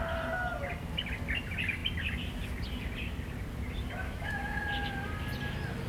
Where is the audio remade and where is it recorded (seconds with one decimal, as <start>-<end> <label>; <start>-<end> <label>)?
0.0-4.0 recorded; 4.0-4.6 remade; 4.6-5.9 recorded